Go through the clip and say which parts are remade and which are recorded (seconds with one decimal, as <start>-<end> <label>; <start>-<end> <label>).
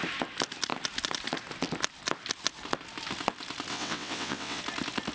0.0-3.7 recorded; 3.7-4.6 remade; 4.6-5.1 recorded